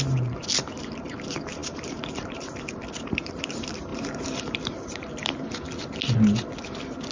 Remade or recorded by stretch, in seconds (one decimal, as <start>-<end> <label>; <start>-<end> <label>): 0.0-0.4 remade; 0.4-0.9 recorded; 0.9-5.2 remade; 5.2-7.1 recorded